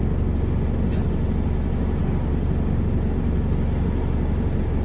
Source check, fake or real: real